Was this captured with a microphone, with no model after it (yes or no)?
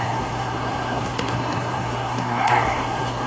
no